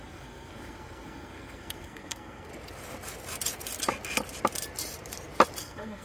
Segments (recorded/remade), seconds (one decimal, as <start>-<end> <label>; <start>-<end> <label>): 0.0-2.5 remade; 2.5-5.6 recorded; 5.6-6.0 remade